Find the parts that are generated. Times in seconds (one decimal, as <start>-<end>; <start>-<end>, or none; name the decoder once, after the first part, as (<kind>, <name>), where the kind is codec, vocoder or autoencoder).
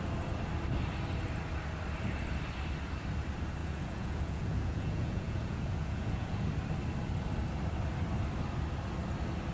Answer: 3.6-6.5 (vocoder, Vocos)